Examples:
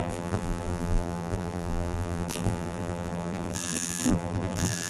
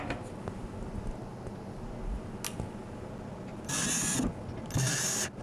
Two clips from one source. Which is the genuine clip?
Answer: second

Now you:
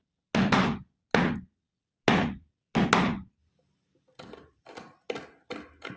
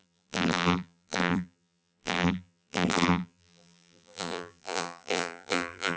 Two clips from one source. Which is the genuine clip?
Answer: first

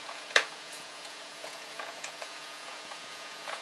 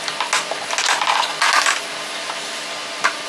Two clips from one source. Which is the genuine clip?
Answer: second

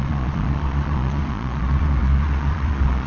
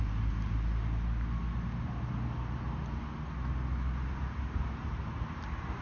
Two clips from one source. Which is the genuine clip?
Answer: second